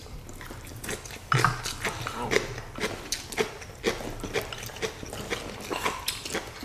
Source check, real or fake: real